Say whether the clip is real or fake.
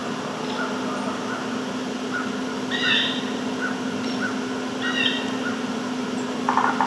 real